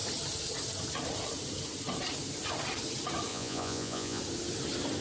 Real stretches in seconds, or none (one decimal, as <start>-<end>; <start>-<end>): 0.0-3.3; 4.2-5.0